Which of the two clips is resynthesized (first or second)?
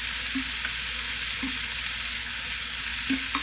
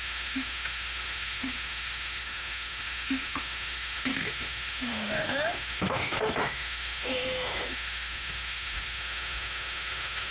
second